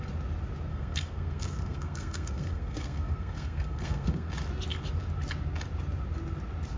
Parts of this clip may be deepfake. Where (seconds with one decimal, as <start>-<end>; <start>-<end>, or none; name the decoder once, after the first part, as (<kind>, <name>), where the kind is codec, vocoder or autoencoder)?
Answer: 0.7-4.3 (codec, SNAC)